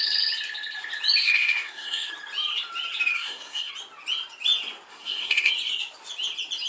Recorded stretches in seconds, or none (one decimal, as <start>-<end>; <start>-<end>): 0.0-1.2; 2.1-3.1; 3.7-4.9; 5.5-6.7